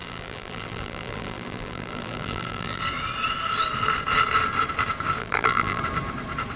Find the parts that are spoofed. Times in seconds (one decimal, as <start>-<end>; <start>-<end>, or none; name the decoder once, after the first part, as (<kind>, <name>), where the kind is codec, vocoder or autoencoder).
0.0-2.8 (vocoder, BigVGAN v2); 5.2-5.8